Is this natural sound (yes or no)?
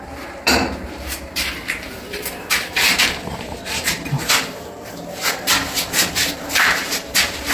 no